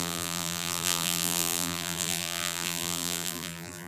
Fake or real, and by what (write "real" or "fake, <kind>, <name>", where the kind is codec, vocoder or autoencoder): fake, vocoder, BigVGAN v2